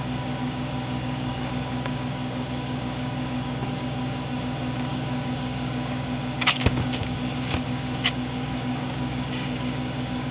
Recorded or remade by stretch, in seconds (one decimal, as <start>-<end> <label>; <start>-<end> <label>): 0.0-10.3 remade